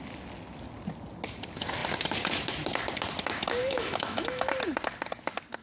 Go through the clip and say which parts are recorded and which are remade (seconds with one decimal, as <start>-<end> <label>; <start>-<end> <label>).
0.0-3.6 recorded; 3.6-4.5 remade; 4.5-5.6 recorded